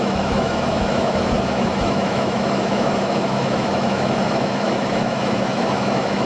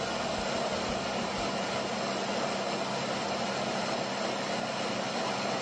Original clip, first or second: second